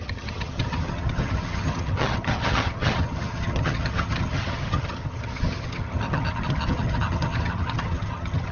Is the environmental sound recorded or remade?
remade